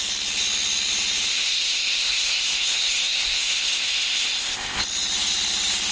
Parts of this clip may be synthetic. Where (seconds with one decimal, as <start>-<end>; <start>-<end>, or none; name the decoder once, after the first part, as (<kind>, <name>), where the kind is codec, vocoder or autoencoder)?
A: 1.3-4.8 (codec, ZipCodec)